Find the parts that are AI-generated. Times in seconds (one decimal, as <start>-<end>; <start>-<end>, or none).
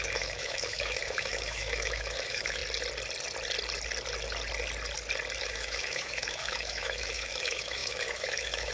0.0-2.6; 5.4-8.7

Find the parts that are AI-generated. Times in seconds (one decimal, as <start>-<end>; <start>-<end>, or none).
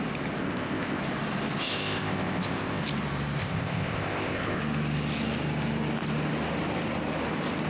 0.4-1.0; 1.6-2.8; 3.4-4.6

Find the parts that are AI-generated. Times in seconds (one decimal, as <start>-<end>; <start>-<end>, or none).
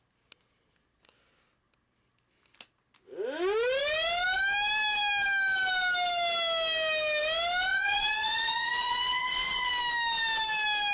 7.7-9.7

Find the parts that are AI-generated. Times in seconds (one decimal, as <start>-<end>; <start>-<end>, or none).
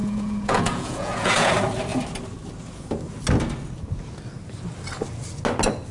0.0-1.5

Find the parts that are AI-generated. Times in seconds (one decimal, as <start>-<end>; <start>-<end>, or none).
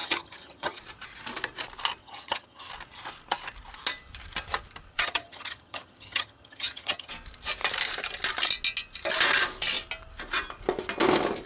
0.0-0.8; 2.0-2.7; 4.9-7.1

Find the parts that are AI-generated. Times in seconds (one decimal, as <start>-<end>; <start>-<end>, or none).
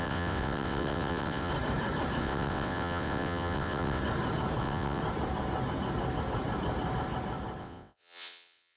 0.0-1.5; 2.2-4.0; 4.6-5.0; 7.6-8.8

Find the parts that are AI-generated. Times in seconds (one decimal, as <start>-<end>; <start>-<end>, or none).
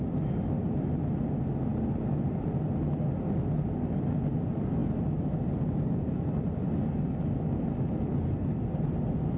none